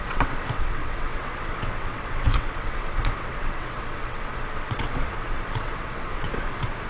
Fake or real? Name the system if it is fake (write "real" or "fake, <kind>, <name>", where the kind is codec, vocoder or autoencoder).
fake, vocoder, WaveNeXt